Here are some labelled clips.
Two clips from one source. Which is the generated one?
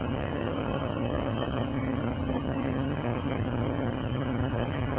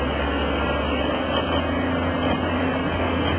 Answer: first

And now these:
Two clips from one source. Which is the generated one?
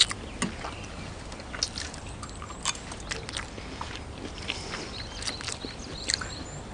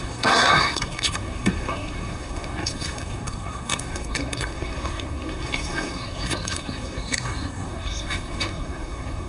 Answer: second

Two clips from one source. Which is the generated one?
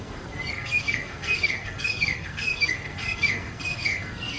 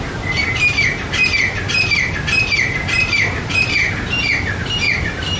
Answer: first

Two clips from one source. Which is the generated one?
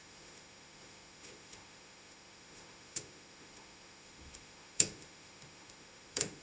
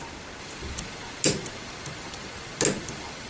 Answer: first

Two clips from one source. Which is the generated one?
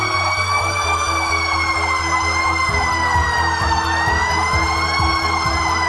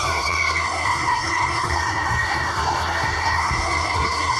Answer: second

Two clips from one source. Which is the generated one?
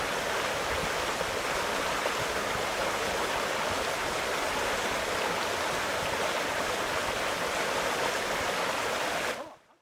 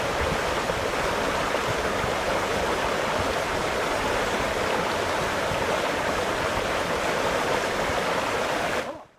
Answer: second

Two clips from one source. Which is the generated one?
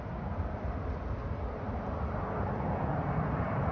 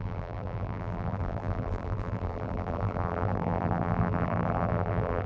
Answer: second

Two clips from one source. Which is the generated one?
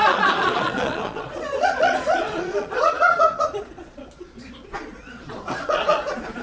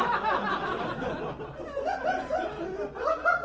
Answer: first